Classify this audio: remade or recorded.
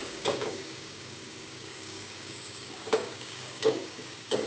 remade